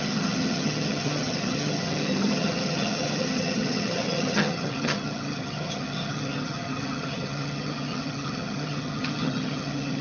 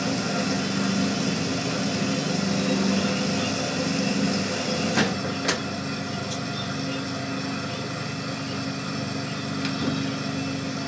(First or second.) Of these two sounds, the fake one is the first